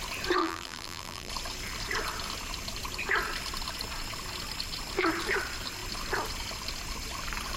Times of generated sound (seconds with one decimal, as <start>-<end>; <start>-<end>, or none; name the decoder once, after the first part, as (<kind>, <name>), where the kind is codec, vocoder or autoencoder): 0.4-1.3 (vocoder, BigVGAN v2)